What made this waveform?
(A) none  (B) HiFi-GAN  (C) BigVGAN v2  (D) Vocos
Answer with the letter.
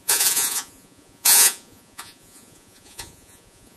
D